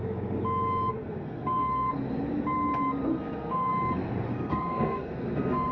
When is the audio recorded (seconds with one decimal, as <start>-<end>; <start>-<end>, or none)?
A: 0.0-0.9; 1.9-3.1; 3.7-4.3